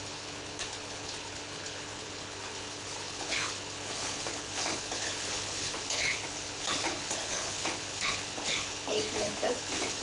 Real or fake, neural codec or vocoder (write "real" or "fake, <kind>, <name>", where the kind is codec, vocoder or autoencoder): fake, codec, HILCodec